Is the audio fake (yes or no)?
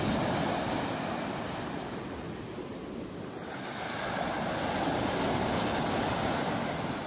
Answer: no